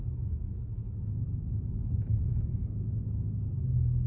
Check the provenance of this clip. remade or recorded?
remade